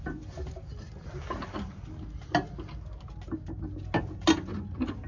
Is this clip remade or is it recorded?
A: recorded